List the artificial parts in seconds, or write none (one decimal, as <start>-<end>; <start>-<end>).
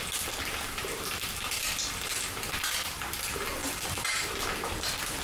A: 0.8-2.7; 3.6-4.3